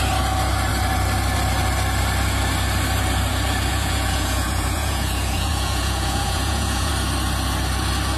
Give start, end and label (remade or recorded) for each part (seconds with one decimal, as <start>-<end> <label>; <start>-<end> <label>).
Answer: 0.0-3.7 recorded; 3.7-6.9 remade; 6.9-8.2 recorded